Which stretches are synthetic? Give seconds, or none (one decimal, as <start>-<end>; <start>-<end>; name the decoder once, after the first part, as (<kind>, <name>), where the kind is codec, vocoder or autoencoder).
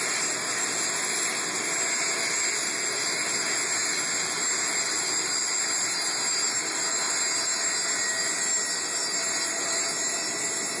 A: none